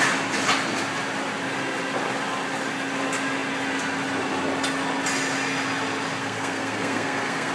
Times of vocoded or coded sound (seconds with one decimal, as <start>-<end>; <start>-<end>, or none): 6.2-7.5